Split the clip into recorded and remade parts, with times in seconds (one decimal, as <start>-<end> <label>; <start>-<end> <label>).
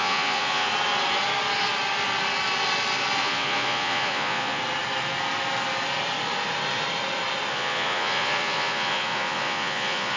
0.0-0.7 remade; 0.7-3.2 recorded; 3.2-4.6 remade; 4.6-7.5 recorded; 7.5-10.2 remade